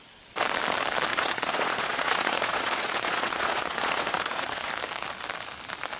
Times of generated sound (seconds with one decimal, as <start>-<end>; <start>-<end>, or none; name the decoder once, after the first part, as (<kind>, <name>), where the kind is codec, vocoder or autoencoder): 1.1-4.7 (vocoder, Vocos)